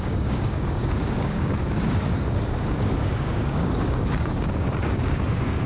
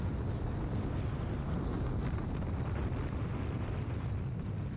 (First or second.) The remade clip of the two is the first